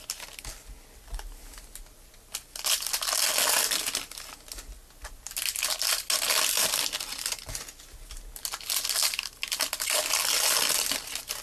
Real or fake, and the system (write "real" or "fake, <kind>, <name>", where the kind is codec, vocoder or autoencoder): real